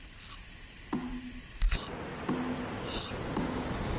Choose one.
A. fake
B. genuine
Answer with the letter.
B